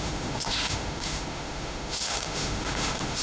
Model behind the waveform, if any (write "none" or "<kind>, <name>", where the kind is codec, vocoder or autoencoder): autoencoder, DAC-VAE